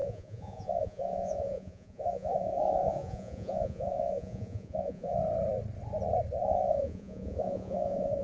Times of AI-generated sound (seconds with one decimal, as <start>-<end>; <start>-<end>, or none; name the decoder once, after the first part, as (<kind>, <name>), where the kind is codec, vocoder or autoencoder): 0.0-5.2 (vocoder, Vocos); 6.4-8.2